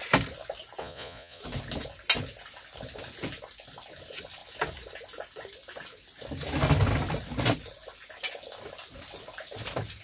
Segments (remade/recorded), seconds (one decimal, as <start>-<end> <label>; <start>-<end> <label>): 0.0-0.8 recorded; 0.8-1.4 remade; 1.4-10.0 recorded